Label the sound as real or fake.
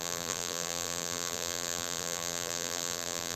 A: fake